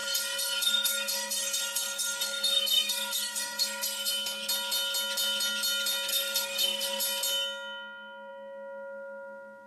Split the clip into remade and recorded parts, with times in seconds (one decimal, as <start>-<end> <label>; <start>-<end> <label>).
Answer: 0.0-4.1 remade; 4.1-6.1 recorded; 6.1-7.0 remade; 7.0-9.7 recorded